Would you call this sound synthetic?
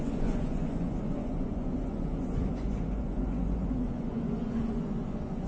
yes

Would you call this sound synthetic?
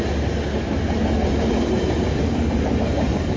no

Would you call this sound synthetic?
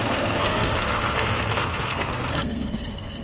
yes